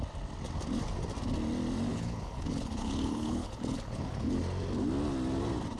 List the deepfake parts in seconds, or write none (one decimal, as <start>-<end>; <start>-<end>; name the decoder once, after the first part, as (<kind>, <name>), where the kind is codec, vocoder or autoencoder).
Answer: 1.9-4.3 (codec, HILCodec)